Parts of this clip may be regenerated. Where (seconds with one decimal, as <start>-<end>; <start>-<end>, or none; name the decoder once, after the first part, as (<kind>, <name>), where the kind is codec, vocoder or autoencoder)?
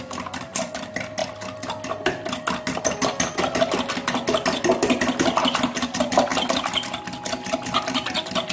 none